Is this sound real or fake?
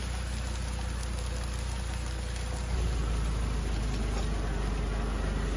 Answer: real